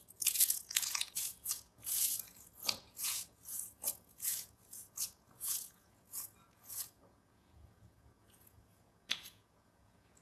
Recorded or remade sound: remade